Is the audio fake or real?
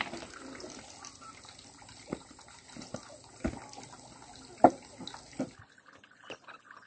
real